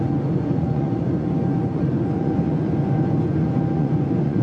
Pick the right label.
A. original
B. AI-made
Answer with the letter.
B